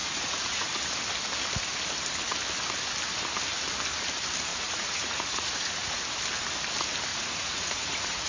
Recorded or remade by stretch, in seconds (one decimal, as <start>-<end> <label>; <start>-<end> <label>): 0.0-0.7 remade; 0.7-4.5 recorded; 4.5-6.0 remade; 6.0-7.1 recorded; 7.1-8.3 remade